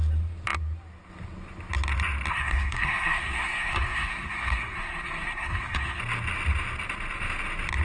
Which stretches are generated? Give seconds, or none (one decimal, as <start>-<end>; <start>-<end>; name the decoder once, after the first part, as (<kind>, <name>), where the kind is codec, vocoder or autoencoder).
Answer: 2.3-6.0 (codec, SNAC)